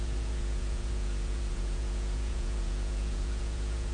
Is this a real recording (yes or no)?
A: no